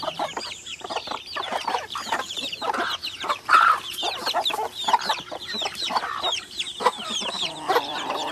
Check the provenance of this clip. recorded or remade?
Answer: remade